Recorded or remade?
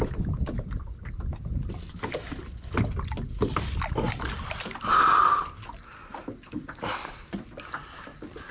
recorded